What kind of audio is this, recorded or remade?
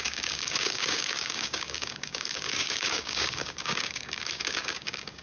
remade